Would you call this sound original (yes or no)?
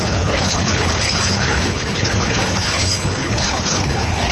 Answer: no